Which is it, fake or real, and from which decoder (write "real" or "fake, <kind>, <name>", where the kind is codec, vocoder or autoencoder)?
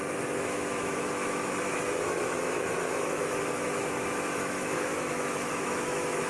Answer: fake, autoencoder, DAC-VAE